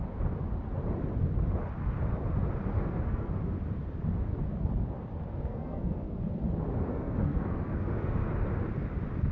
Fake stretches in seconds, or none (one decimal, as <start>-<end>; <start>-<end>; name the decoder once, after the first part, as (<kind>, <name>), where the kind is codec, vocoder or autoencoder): 2.7-3.3 (codec, SNAC); 5.3-6.2; 6.9-8.3